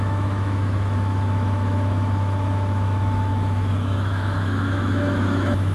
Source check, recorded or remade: remade